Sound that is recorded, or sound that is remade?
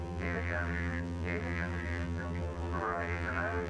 remade